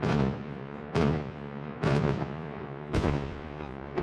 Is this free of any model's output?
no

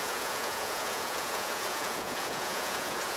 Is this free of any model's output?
no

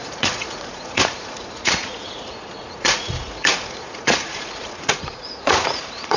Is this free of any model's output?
no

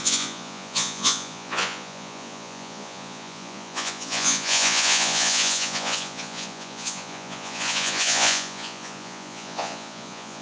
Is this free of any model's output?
no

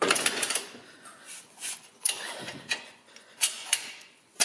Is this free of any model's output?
no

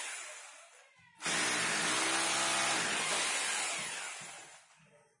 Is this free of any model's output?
yes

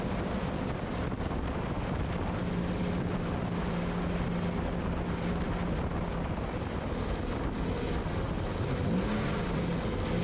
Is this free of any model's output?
yes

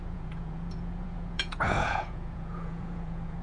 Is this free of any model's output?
no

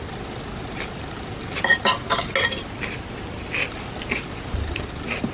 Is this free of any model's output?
yes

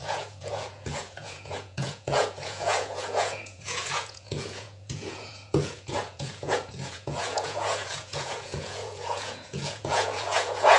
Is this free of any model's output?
no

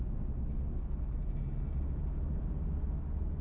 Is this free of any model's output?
yes